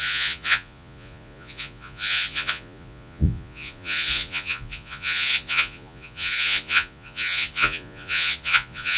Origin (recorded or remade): remade